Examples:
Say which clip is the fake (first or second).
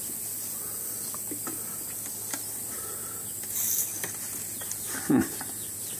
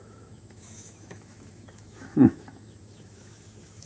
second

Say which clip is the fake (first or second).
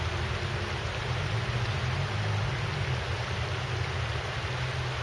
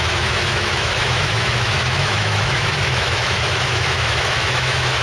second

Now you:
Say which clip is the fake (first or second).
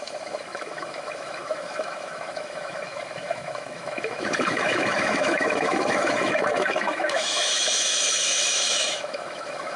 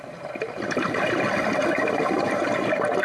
first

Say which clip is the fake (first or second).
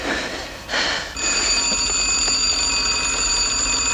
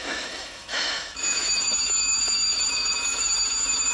second